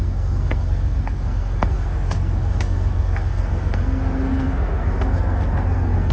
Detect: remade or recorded remade